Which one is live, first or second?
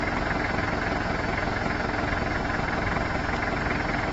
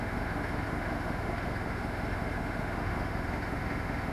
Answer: first